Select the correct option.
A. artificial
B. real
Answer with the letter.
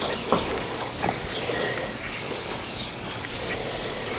A